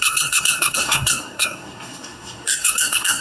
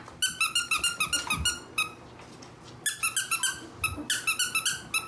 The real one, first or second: second